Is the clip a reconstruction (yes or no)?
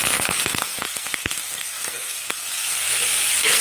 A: yes